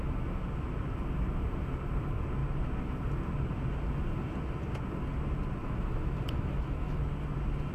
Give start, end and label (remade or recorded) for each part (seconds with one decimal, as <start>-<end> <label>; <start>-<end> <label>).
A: 0.0-5.6 recorded; 5.6-7.0 remade; 7.0-7.7 recorded